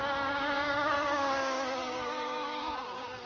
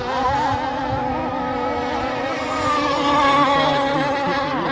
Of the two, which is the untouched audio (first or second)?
second